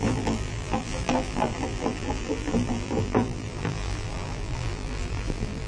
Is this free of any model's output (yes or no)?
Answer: no